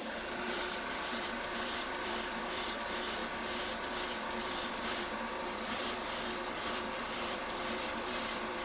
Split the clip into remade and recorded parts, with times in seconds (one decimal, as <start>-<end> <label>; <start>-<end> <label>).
0.0-8.6 remade